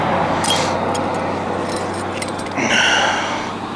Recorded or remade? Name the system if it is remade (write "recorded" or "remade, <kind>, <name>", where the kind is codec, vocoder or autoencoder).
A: remade, vocoder, BigVGAN v2